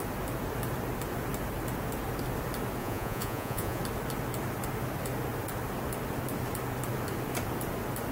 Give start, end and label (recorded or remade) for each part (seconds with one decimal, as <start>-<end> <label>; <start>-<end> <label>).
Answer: 0.0-2.8 recorded; 2.8-3.8 remade; 3.8-8.1 recorded